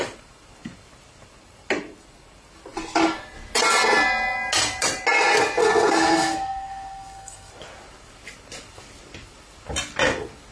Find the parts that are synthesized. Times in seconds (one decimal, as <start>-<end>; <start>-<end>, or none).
5.6-7.5